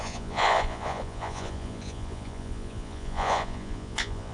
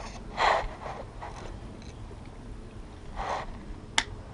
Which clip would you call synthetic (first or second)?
first